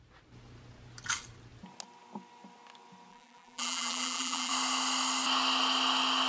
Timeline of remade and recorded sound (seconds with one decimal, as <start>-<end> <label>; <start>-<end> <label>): 0.0-3.1 recorded; 3.1-4.5 remade; 4.5-6.3 recorded